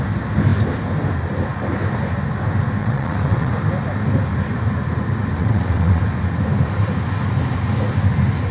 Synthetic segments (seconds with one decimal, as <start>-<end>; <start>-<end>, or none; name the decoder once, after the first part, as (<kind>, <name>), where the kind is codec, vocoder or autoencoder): 2.8-3.5 (vocoder, WaveNeXt); 5.4-6.0